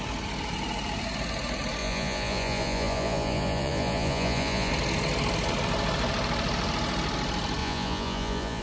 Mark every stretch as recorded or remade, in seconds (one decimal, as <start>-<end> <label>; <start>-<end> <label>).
0.0-1.8 recorded; 1.8-4.7 remade; 4.7-7.6 recorded; 7.6-8.6 remade